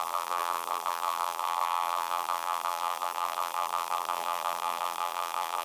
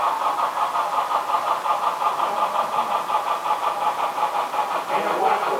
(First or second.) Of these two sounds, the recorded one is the second